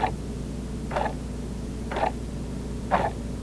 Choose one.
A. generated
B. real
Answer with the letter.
B